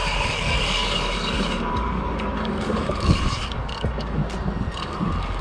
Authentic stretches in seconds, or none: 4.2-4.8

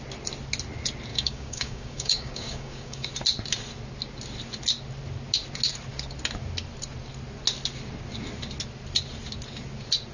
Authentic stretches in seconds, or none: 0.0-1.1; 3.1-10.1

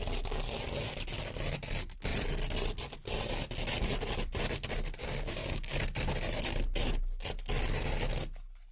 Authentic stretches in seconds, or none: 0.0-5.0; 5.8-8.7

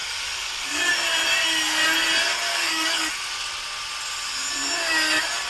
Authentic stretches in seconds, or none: 0.9-2.5; 3.1-5.5

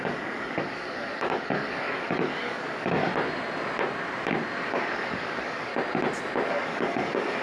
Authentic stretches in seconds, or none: 3.1-4.7; 5.7-6.5

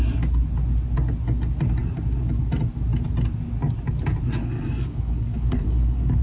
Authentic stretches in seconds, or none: 0.0-4.4

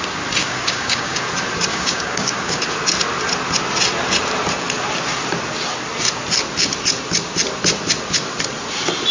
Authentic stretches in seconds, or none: 0.0-0.4; 1.2-1.7; 2.6-9.1